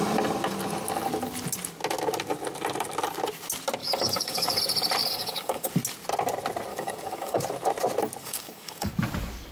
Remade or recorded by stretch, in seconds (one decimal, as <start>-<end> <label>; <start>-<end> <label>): 0.0-3.8 recorded; 3.8-4.6 remade; 4.6-5.0 recorded; 5.0-5.7 remade; 5.7-6.7 recorded; 6.7-7.4 remade; 7.4-8.2 recorded; 8.2-8.9 remade; 8.9-9.5 recorded